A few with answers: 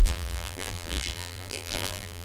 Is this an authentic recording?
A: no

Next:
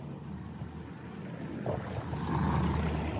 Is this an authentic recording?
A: yes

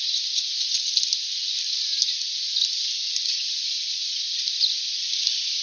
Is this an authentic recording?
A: yes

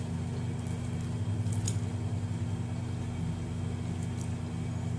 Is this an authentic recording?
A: yes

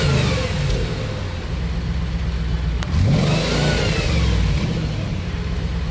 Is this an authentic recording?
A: yes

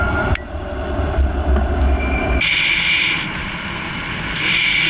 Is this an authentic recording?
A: no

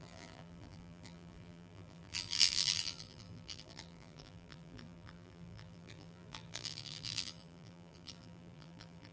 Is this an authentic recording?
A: no